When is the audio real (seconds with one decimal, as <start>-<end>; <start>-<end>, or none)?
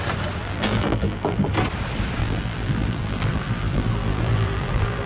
0.0-0.4; 1.5-2.2